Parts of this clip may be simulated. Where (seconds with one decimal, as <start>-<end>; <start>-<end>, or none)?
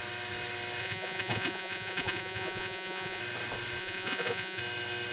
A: 0.8-3.2; 3.8-4.6